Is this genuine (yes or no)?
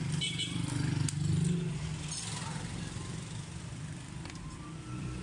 no